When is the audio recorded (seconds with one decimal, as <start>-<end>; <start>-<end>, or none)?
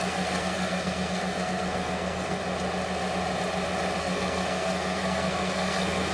2.4-4.0